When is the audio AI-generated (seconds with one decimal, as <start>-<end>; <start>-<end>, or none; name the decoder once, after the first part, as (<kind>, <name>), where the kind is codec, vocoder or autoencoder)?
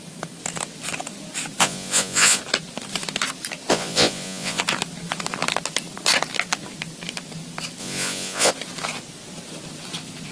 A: 1.6-2.4 (vocoder, Vocos); 3.7-4.6; 7.8-8.5